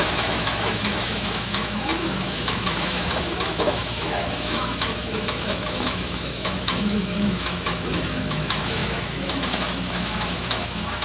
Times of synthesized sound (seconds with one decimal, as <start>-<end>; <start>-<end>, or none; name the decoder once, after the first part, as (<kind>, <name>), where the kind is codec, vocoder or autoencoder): 0.0-11.0 (autoencoder, DAC-VAE)